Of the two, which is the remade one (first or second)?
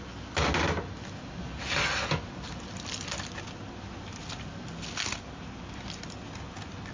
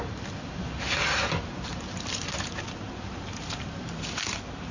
second